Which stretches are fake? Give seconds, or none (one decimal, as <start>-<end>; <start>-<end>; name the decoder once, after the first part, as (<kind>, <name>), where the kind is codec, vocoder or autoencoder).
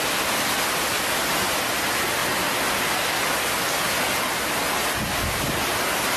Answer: none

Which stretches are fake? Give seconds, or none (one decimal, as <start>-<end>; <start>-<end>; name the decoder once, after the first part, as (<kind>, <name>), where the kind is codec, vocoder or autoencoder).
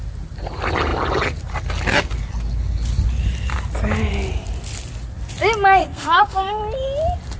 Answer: 5.8-6.6 (codec, SNAC)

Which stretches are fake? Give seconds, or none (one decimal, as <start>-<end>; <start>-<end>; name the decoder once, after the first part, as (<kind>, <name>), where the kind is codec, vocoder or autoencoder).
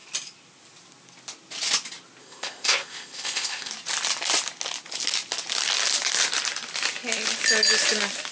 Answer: 2.2-3.7 (codec, ZipCodec)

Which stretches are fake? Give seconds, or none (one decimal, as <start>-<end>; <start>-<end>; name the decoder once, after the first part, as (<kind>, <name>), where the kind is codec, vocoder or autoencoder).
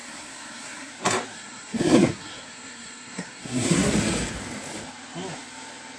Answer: 0.0-0.9 (codec, SNAC); 1.3-3.9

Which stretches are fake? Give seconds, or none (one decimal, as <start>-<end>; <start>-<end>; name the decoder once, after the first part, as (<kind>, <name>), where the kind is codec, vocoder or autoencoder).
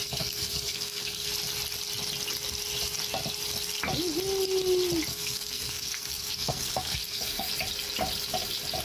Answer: 0.0-1.3 (codec, SNAC); 5.1-7.5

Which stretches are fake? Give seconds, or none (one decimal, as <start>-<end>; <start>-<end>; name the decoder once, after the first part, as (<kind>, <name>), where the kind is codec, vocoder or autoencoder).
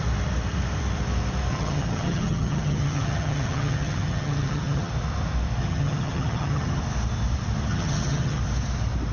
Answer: 1.5-4.9 (vocoder, HiFi-GAN); 5.6-6.8; 7.7-8.4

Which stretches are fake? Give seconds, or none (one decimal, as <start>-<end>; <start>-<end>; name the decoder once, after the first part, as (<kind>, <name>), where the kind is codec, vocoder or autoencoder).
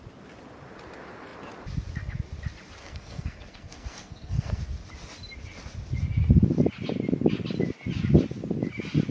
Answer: 2.8-4.6 (codec, SNAC)